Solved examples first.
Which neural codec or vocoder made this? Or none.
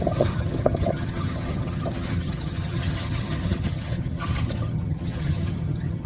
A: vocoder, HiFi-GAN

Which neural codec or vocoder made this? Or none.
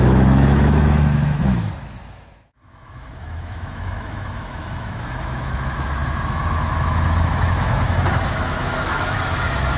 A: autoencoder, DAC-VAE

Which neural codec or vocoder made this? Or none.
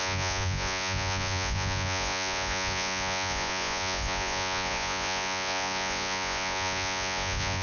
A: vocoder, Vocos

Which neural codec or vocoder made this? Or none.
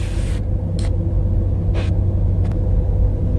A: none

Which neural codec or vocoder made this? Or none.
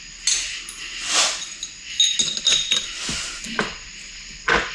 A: none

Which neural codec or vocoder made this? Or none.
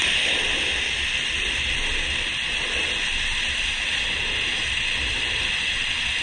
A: none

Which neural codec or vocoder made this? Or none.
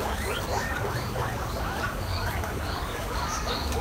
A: codec, DAC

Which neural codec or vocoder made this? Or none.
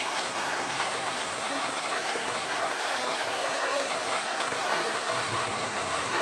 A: codec, SNAC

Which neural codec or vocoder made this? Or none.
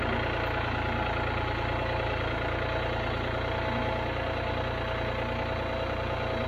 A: none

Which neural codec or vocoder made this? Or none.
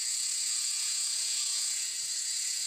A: vocoder, Vocos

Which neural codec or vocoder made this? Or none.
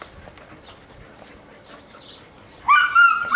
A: none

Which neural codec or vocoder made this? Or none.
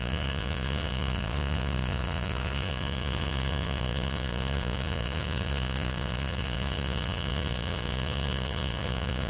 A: vocoder, Vocos